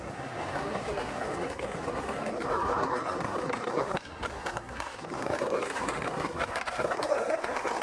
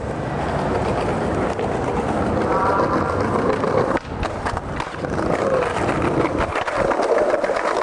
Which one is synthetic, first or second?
first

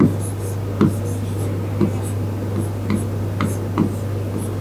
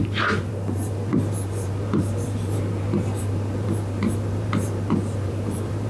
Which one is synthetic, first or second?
second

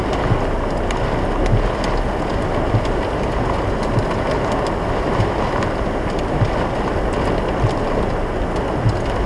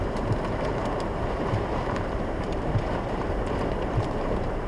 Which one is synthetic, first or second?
second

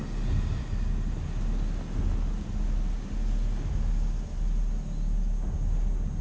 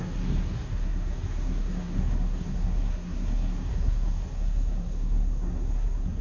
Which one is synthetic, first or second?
second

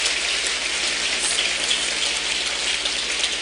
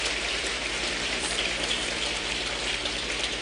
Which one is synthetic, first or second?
second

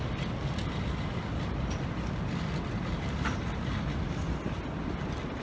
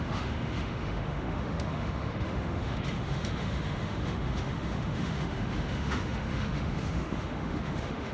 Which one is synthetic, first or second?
second